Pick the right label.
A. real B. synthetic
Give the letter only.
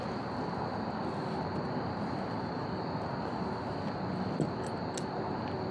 A